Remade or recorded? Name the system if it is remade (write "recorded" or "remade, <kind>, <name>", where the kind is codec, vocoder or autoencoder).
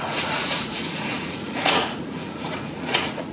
remade, vocoder, Vocos